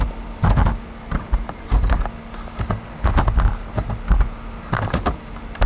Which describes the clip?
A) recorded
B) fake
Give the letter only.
A